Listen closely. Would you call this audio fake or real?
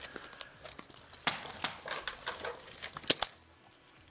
real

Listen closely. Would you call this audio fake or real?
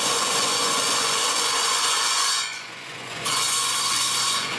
fake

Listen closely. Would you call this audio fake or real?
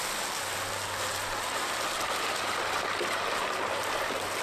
real